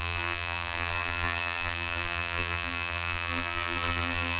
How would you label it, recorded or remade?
remade